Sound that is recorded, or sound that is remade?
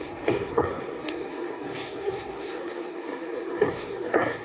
remade